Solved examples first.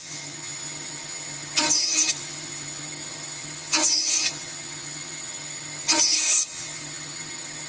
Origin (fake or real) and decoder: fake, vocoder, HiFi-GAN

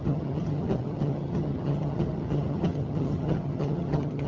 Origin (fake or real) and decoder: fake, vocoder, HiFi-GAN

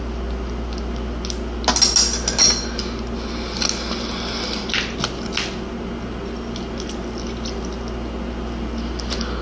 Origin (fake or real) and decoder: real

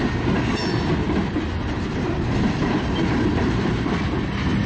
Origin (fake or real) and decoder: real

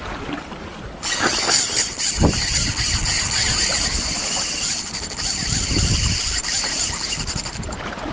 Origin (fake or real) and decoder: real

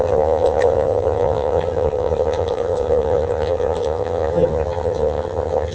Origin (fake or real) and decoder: fake, vocoder, HiFi-GAN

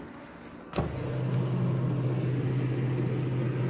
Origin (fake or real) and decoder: real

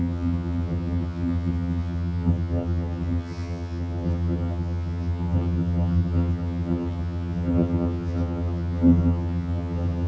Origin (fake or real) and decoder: fake, vocoder, HiFi-GAN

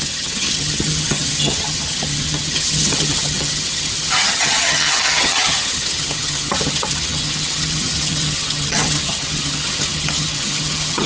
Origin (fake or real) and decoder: fake, vocoder, HiFi-GAN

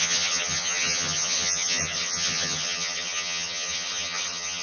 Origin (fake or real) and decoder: fake, vocoder, HiFi-GAN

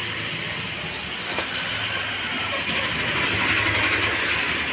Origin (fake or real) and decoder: real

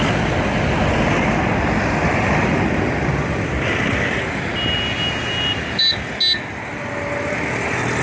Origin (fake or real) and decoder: real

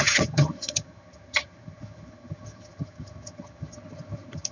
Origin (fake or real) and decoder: fake, vocoder, HiFi-GAN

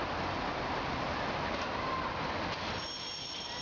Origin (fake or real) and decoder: real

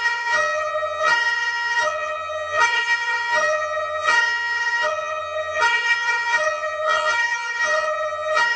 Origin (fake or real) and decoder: fake, vocoder, HiFi-GAN